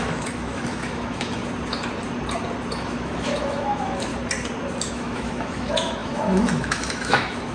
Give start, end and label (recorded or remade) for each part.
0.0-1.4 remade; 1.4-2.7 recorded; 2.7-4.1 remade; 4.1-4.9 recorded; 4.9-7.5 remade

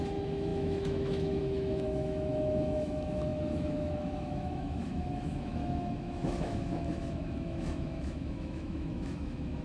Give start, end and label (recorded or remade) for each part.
0.0-9.6 remade

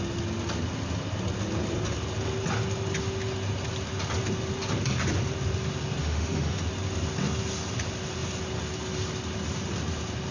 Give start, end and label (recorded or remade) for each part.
0.0-6.0 recorded; 6.0-6.6 remade; 6.6-10.3 recorded

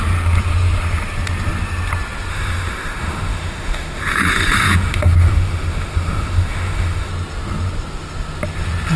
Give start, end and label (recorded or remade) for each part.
0.0-2.3 recorded; 2.3-7.1 remade; 7.1-9.0 recorded

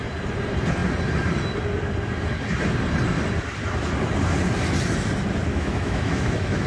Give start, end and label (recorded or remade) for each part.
0.0-5.5 recorded; 5.5-6.7 remade

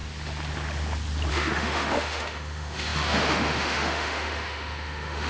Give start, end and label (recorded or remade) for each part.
0.0-1.3 recorded; 1.3-5.3 remade